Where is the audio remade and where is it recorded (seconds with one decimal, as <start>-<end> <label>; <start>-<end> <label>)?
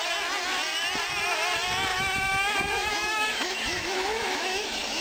0.0-1.9 recorded; 1.9-5.0 remade